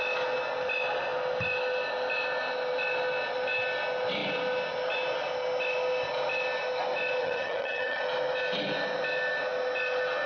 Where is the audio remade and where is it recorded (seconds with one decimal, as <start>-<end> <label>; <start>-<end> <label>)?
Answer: 0.0-7.2 recorded; 7.2-8.0 remade; 8.0-10.3 recorded